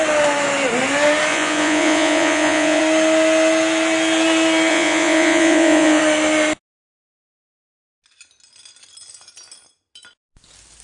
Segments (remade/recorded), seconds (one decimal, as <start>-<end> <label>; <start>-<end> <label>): 0.0-1.3 recorded; 1.3-2.8 remade; 2.8-4.7 recorded; 4.7-6.0 remade; 6.0-10.8 recorded